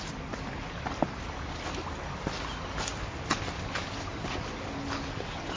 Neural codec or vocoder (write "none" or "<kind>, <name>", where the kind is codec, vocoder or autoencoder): none